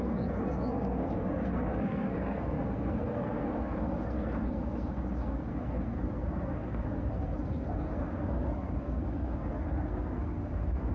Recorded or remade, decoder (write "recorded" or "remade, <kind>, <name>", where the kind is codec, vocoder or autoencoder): remade, codec, SNAC